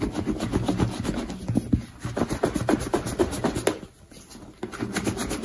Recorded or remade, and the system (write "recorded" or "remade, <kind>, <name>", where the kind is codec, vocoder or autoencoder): recorded